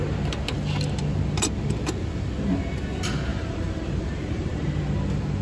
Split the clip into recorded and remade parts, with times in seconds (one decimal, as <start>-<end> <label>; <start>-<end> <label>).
0.0-3.3 recorded; 3.3-4.7 remade; 4.7-5.4 recorded